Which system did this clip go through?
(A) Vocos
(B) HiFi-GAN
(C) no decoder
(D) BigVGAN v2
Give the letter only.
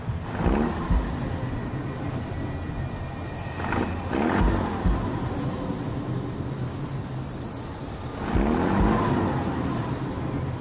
C